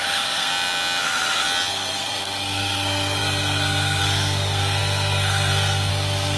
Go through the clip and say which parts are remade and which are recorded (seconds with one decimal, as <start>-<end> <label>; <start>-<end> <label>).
0.0-0.5 remade; 0.5-1.7 recorded; 1.7-6.4 remade